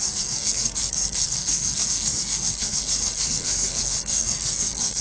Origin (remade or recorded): remade